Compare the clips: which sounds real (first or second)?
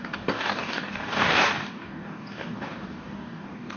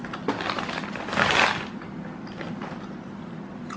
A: second